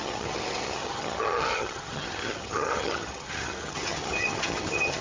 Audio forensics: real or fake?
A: fake